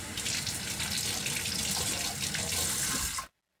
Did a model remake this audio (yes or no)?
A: no